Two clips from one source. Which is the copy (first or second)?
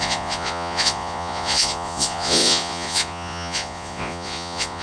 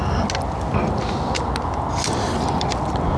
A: first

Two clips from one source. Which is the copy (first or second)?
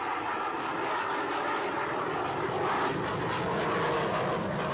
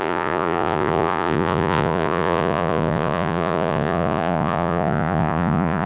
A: second